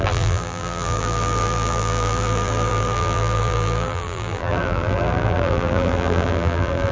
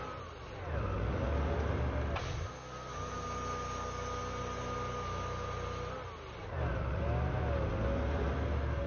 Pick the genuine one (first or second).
second